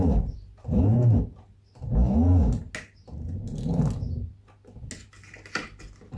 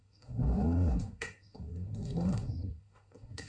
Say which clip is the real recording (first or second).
first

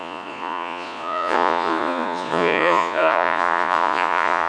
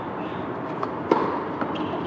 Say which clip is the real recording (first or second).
second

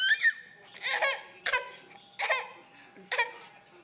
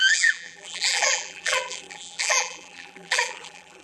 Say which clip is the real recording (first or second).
first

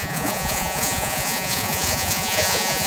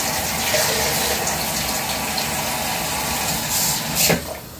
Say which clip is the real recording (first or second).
second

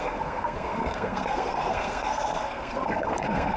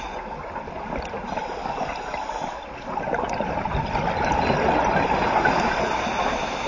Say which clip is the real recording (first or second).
second